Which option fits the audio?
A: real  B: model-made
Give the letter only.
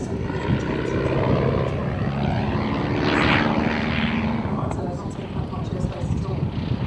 A